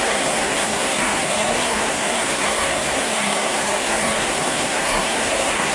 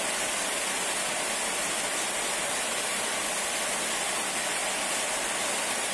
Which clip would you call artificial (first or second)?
first